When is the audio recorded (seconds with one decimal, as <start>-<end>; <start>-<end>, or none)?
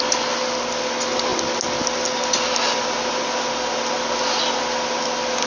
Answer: 0.0-5.5